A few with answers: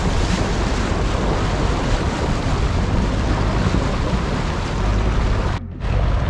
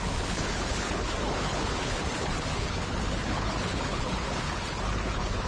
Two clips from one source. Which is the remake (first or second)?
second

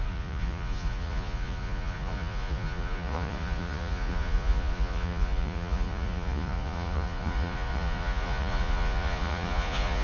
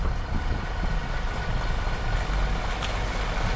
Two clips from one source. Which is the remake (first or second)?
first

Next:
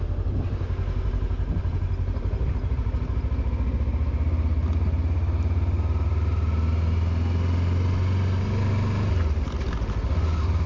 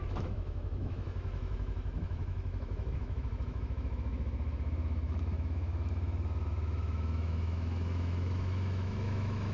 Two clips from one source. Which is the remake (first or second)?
second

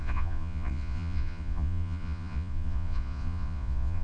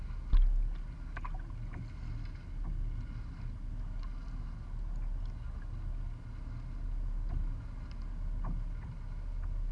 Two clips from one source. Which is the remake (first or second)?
first